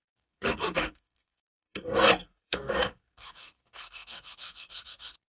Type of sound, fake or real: fake